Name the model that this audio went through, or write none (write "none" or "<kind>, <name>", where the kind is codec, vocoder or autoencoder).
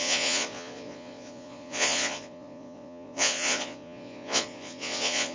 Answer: vocoder, Vocos